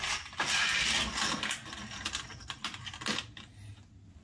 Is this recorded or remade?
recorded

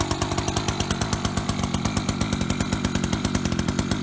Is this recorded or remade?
recorded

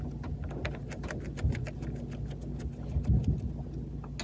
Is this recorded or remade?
recorded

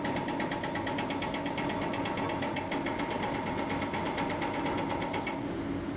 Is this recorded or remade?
recorded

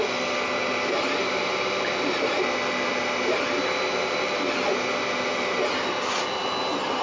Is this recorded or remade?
recorded